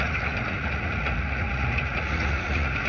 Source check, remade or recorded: remade